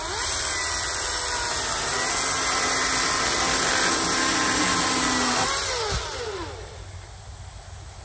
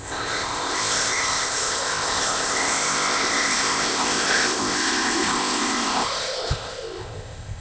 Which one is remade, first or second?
second